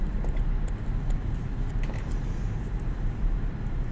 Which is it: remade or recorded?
recorded